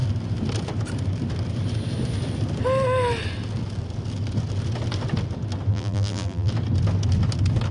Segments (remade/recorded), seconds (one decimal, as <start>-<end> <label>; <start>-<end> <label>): 0.0-5.7 recorded; 5.7-6.5 remade; 6.5-7.7 recorded